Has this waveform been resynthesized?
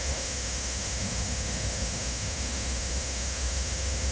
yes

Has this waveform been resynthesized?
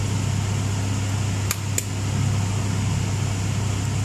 no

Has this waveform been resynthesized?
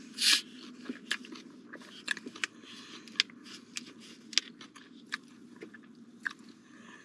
no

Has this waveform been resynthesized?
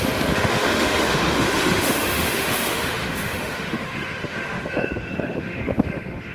yes